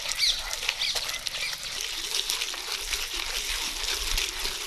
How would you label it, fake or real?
real